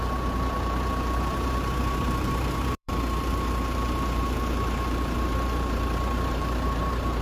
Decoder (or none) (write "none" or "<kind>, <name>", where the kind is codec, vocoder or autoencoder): vocoder, BigVGAN v2